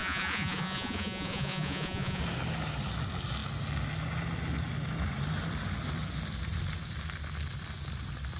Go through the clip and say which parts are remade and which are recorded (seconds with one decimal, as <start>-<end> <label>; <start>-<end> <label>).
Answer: 0.0-2.2 remade; 2.2-8.4 recorded